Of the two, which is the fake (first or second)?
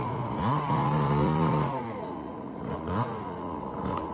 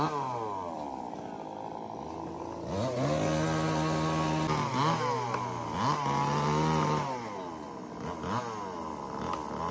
first